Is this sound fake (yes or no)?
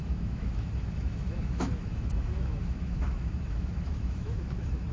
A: yes